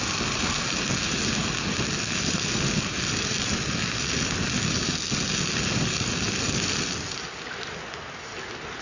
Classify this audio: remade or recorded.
recorded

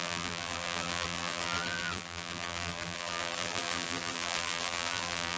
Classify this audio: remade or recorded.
remade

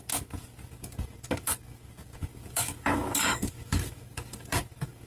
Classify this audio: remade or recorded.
remade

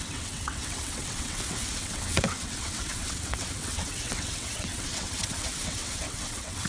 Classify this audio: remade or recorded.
remade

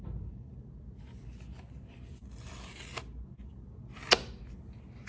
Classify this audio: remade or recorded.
recorded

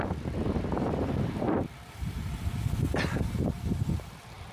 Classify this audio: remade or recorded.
remade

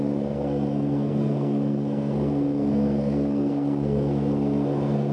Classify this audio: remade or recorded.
remade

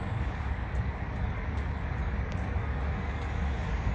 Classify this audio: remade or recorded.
remade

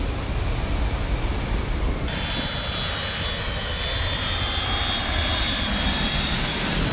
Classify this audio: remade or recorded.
recorded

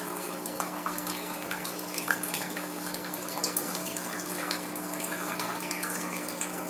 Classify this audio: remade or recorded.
remade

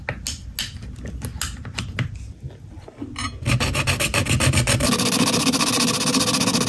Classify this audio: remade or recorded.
recorded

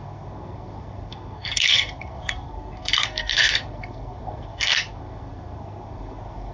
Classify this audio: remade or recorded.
remade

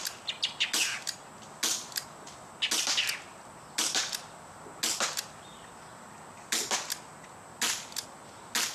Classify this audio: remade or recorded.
recorded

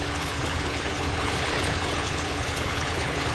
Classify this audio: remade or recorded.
remade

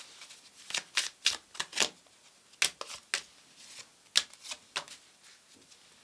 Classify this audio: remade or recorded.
recorded